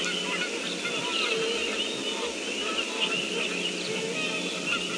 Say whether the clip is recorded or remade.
recorded